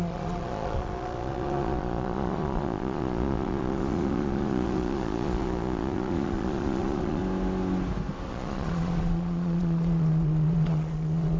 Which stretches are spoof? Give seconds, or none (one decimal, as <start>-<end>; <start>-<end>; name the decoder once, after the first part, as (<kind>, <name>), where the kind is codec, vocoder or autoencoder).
0.0-7.2 (vocoder, Vocos); 8.3-11.4